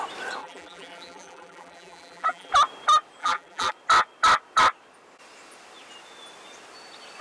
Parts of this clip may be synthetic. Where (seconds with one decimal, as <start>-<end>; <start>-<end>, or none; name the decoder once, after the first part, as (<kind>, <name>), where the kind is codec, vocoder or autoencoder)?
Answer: 0.4-2.5 (vocoder, BigVGAN v2); 3.2-3.7